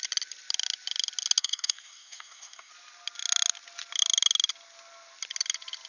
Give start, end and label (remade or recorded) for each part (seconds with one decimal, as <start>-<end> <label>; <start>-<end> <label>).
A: 0.0-1.4 recorded; 1.4-2.7 remade; 2.7-5.9 recorded